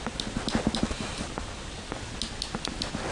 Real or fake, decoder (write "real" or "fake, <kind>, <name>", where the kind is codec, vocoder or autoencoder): real